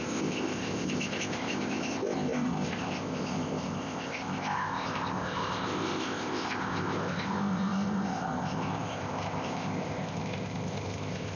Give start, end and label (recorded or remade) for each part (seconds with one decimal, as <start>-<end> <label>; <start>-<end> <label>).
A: 0.0-11.4 remade